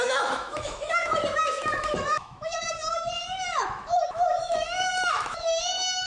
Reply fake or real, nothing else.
fake